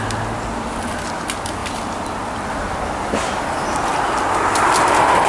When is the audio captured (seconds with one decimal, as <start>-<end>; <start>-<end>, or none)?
0.0-5.3